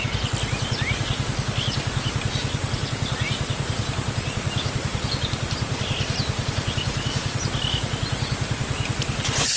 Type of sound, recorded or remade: recorded